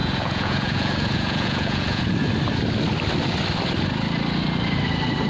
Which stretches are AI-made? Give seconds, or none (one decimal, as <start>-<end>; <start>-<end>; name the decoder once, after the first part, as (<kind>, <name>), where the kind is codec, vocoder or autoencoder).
0.0-2.1 (vocoder, Vocos)